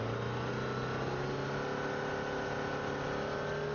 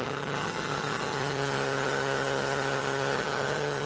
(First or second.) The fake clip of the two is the second